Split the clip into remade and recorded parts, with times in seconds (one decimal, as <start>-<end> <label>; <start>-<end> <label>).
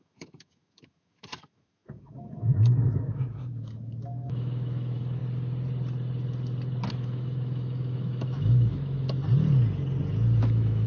0.0-5.2 remade; 5.2-6.9 recorded; 6.9-9.2 remade; 9.2-10.4 recorded; 10.4-10.9 remade